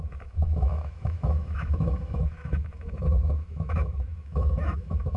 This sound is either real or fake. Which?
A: fake